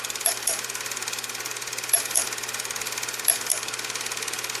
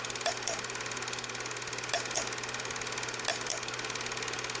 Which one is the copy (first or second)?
first